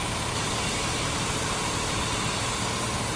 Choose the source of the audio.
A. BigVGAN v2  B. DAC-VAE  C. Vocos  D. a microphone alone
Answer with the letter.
D